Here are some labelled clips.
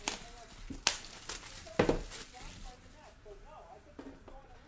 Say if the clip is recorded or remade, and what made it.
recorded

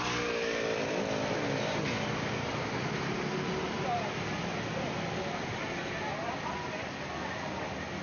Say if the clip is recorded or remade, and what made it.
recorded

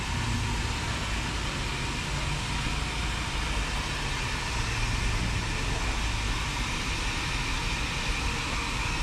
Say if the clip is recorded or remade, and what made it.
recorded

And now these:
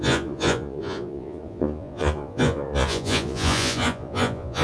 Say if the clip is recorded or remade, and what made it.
remade, vocoder, Vocos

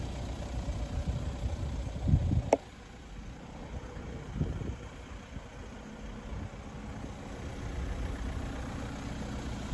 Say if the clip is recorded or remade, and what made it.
recorded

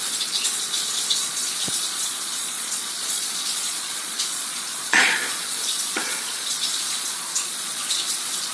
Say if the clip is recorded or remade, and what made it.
remade, vocoder, Vocos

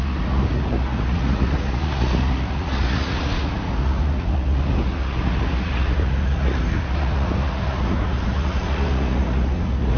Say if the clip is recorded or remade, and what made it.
remade, vocoder, Vocos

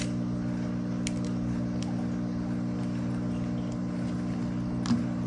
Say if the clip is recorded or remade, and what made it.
recorded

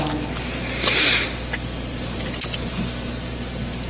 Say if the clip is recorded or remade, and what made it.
recorded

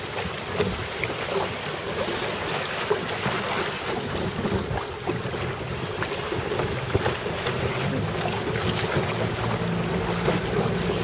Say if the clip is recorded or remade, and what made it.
recorded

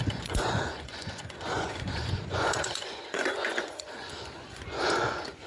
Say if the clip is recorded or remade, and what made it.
remade, vocoder, Vocos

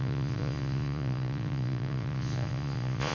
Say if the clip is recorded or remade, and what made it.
remade, vocoder, Vocos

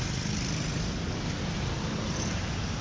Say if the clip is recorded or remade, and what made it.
recorded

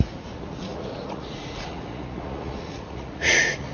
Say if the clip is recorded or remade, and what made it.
remade, vocoder, Vocos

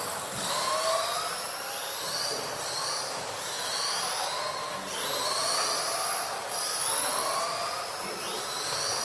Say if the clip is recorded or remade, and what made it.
recorded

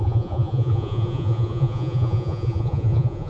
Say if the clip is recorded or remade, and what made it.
remade, vocoder, Vocos